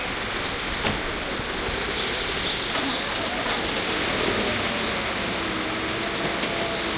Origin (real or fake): real